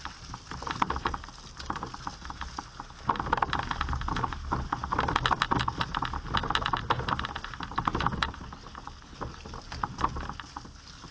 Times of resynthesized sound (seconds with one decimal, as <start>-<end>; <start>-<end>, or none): none